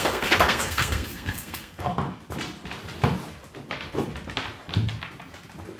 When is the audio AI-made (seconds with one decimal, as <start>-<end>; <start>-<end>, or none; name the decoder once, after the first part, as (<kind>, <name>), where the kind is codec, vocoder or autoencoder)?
0.0-1.9 (codec, SNAC)